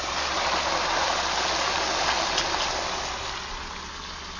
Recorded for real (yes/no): yes